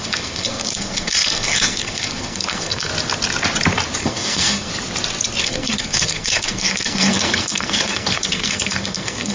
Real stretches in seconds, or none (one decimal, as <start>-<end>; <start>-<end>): 2.9-4.0; 4.7-5.4